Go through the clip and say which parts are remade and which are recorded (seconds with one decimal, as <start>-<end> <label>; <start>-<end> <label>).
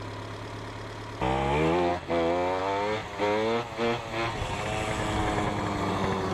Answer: 0.0-6.3 recorded